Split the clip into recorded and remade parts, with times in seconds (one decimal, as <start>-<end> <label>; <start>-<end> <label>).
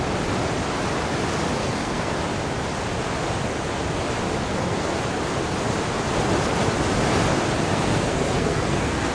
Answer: 0.0-1.6 recorded; 1.6-2.1 remade; 2.1-4.5 recorded; 4.5-5.0 remade; 5.0-7.7 recorded; 7.7-9.1 remade